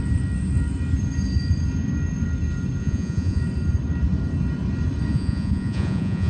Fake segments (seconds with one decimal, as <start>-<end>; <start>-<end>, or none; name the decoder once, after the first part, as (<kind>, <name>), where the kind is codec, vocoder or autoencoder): 2.8-3.4 (vocoder, Vocos); 5.1-6.3